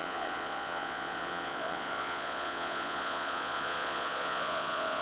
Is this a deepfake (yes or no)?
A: yes